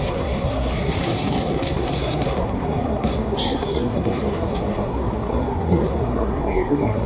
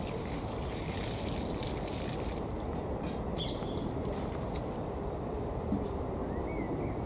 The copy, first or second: first